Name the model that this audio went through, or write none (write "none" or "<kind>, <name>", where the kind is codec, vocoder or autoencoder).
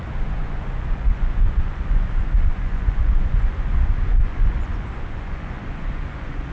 vocoder, Vocos